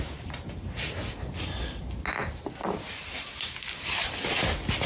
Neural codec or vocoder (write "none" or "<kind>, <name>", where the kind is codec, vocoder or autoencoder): none